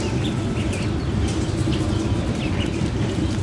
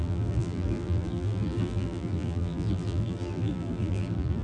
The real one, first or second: first